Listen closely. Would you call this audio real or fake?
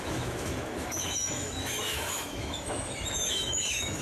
fake